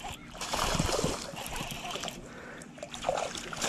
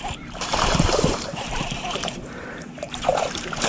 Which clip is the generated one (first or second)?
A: second